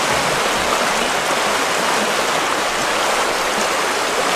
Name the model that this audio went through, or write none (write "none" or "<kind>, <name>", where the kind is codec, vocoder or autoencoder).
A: none